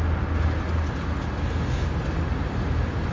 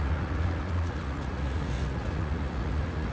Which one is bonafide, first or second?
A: first